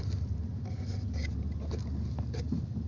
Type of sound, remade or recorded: recorded